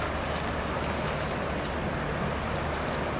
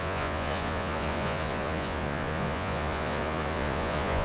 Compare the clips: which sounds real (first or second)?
first